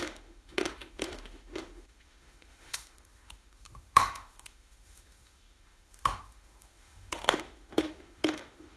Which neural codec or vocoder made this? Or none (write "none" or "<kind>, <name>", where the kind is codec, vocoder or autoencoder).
autoencoder, DAC-VAE